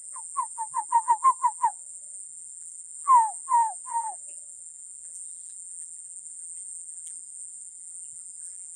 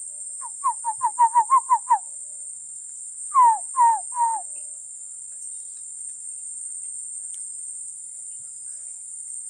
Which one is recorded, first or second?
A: second